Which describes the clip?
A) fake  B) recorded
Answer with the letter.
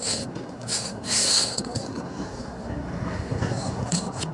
A